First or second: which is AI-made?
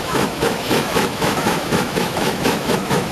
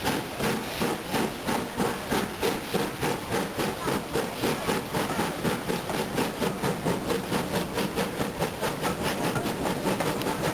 first